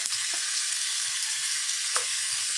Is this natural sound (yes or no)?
no